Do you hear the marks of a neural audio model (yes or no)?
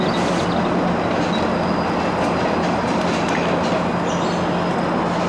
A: no